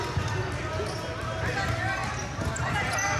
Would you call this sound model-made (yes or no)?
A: no